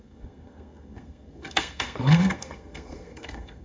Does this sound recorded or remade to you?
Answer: remade